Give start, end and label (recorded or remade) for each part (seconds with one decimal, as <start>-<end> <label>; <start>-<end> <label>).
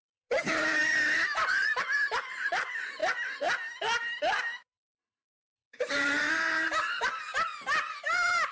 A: 0.0-0.8 remade; 0.8-1.8 recorded; 1.8-3.0 remade; 3.0-5.1 recorded; 5.1-8.5 remade